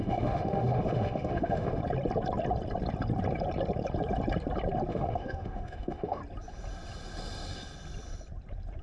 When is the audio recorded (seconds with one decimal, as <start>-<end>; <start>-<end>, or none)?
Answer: 1.8-4.9; 6.2-8.8